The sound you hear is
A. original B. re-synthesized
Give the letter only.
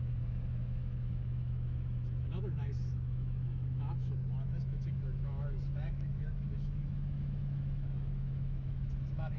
B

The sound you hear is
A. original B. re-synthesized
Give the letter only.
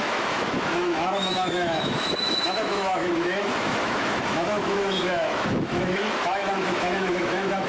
B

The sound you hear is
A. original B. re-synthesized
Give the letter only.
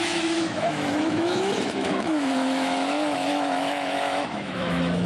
B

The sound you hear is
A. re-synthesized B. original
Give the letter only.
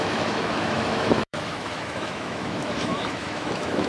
A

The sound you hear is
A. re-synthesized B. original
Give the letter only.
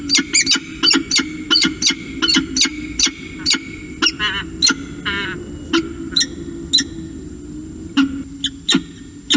B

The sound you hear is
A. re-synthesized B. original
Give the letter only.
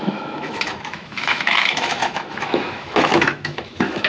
A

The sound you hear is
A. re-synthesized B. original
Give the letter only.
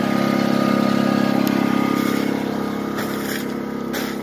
B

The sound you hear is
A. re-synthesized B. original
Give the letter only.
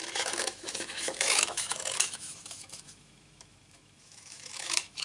A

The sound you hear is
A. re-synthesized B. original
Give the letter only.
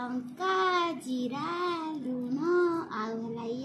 B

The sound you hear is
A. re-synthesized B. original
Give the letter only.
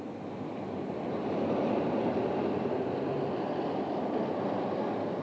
B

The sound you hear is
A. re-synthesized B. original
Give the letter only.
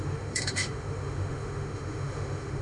A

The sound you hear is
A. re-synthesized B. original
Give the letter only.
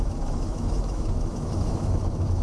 A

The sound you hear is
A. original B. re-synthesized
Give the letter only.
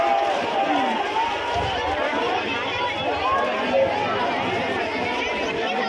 A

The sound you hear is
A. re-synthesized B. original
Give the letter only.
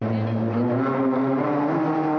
B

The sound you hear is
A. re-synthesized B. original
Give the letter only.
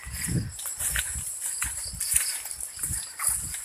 B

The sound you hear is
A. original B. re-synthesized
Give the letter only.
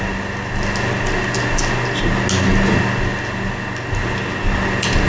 A